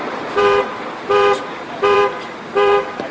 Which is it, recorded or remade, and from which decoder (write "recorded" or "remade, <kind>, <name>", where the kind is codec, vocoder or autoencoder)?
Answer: remade, vocoder, BigVGAN v2